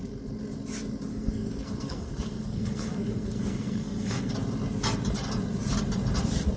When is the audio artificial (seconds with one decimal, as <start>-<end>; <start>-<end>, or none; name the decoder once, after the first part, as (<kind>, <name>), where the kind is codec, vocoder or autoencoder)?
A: 1.1-4.3 (codec, SNAC)